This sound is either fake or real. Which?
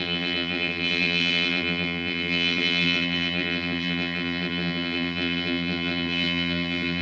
fake